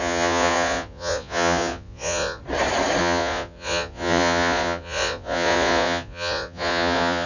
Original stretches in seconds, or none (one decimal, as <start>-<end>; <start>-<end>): 2.4-3.0